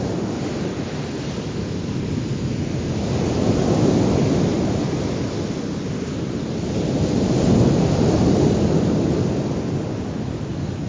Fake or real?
real